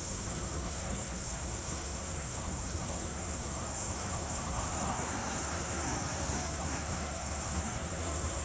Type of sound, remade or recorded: remade